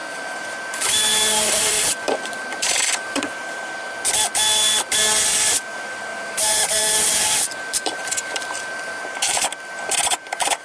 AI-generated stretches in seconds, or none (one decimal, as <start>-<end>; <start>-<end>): 0.0-3.6; 5.6-9.4; 10.1-10.6